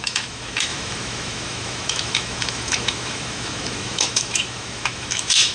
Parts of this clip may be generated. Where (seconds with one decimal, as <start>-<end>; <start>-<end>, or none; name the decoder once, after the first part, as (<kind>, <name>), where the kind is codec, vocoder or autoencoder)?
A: 0.0-5.5 (autoencoder, DAC-VAE)